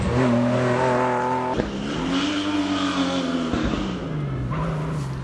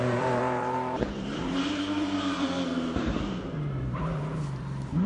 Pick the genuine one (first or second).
first